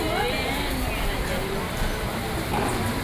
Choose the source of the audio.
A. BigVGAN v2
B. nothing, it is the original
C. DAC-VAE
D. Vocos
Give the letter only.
B